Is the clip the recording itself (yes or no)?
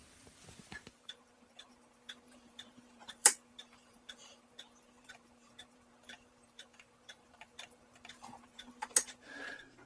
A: no